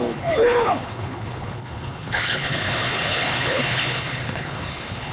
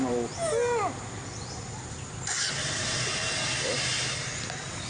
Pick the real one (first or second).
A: second